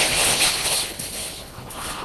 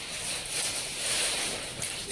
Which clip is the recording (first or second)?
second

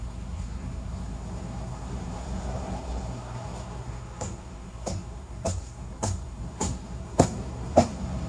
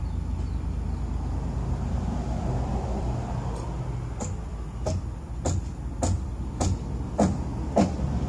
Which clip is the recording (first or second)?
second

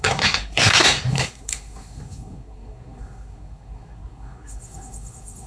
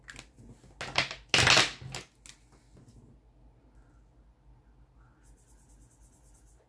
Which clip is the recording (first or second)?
second